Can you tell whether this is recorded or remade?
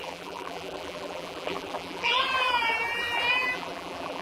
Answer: remade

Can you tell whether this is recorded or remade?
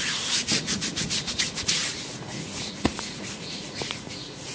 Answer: remade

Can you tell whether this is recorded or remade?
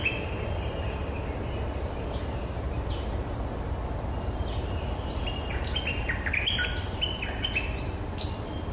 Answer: recorded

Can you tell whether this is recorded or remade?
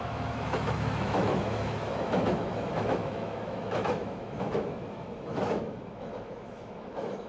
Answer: remade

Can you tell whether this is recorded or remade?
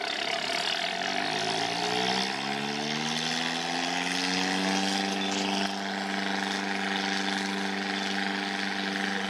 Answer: recorded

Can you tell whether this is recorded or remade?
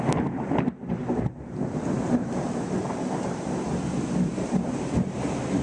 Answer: remade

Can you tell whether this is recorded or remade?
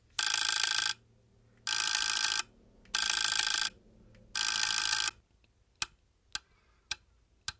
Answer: recorded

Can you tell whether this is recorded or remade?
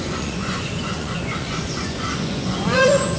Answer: remade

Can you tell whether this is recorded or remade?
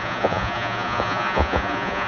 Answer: remade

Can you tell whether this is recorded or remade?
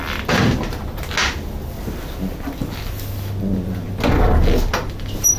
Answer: recorded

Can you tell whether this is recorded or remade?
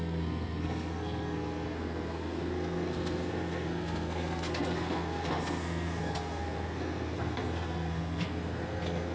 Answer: remade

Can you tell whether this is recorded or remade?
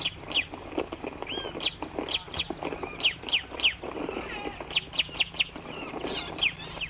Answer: recorded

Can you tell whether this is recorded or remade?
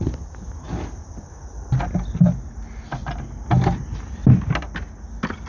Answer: recorded